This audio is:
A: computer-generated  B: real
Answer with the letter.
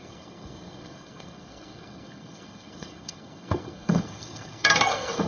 A